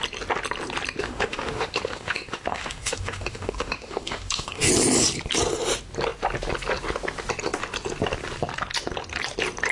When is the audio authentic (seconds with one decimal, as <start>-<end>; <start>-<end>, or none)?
0.0-1.0; 4.7-9.7